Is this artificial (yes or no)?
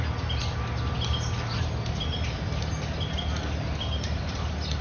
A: no